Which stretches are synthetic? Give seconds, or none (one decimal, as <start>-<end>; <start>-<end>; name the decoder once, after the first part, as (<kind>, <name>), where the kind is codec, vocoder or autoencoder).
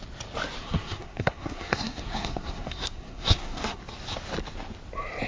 0.6-3.8 (codec, SNAC)